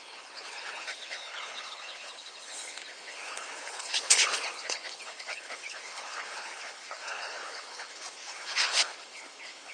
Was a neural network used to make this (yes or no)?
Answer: yes